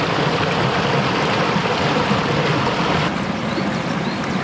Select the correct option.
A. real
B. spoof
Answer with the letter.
B